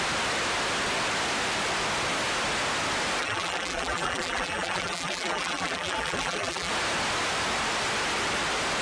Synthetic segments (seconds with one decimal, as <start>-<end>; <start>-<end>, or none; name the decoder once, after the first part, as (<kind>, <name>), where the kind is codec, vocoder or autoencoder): 3.2-6.7 (vocoder, BigVGAN v2)